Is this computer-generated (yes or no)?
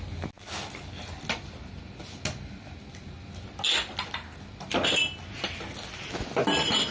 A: no